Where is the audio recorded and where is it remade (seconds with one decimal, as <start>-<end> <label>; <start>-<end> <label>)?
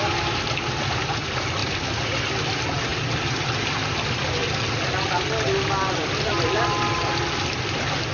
0.0-2.9 recorded; 2.9-3.6 remade; 3.6-4.4 recorded; 4.4-7.2 remade; 7.2-8.1 recorded